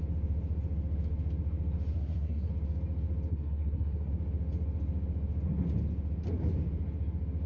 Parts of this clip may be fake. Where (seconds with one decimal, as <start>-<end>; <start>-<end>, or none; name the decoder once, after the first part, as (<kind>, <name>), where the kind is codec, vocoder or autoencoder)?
1.9-2.5 (codec, SNAC); 3.3-4.1